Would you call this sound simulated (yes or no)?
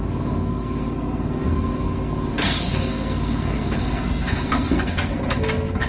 yes